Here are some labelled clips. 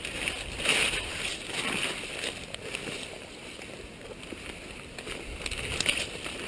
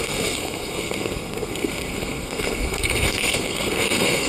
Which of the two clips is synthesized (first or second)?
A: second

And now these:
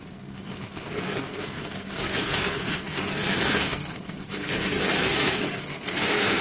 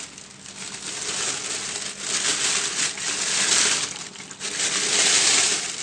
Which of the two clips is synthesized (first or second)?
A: first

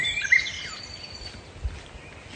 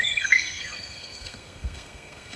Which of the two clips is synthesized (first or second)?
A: second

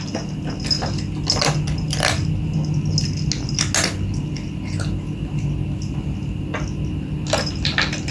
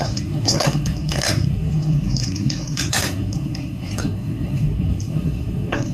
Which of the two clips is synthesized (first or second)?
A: second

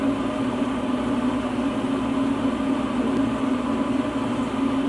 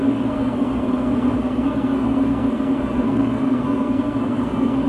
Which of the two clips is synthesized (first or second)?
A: second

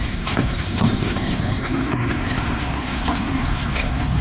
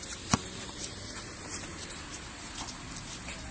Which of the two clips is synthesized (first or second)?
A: first